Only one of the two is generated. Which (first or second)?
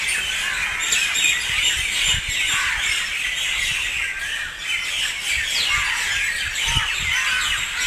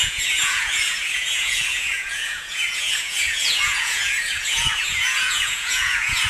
second